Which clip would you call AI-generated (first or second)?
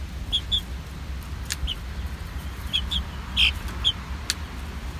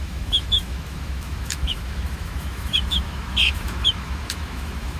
second